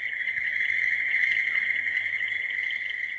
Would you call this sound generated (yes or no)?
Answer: no